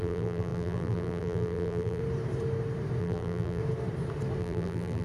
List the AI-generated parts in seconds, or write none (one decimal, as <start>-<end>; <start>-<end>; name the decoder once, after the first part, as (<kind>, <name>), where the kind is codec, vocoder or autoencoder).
0.0-2.0 (vocoder, BigVGAN v2); 3.0-3.6; 4.4-5.0